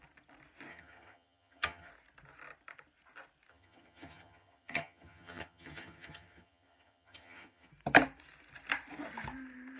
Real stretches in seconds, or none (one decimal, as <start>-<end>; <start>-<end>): 0.0-0.7; 1.9-3.5; 7.7-9.8